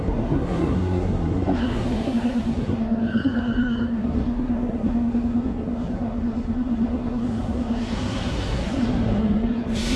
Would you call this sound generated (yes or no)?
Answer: yes